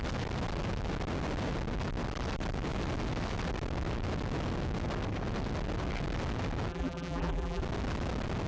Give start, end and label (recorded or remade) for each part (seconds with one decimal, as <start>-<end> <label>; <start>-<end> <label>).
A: 0.0-6.7 recorded; 6.7-7.6 remade; 7.6-8.5 recorded